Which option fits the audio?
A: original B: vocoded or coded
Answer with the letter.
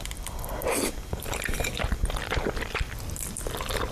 B